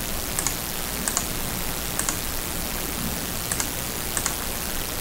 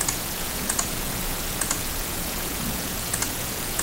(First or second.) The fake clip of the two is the second